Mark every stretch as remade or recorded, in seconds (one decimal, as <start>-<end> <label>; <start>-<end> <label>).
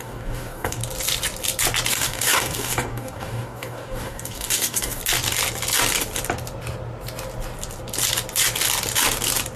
0.0-0.8 remade; 0.8-1.9 recorded; 1.9-5.0 remade; 5.0-9.6 recorded